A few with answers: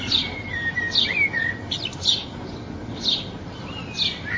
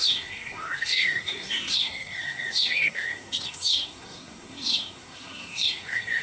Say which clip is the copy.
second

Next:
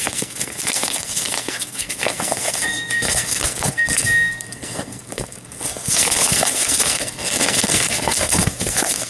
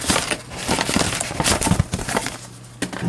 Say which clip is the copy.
first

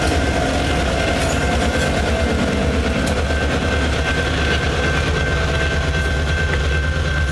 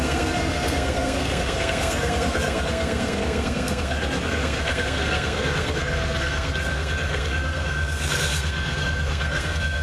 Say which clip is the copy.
second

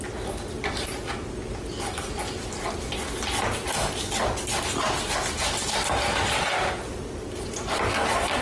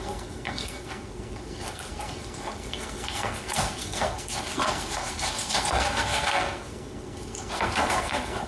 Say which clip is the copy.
second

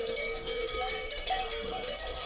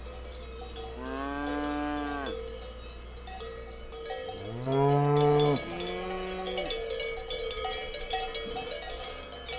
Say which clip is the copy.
first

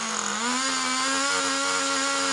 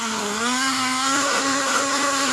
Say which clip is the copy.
second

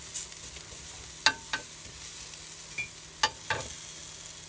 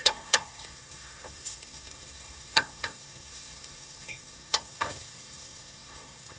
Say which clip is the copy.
second